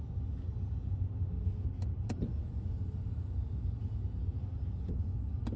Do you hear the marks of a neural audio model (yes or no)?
no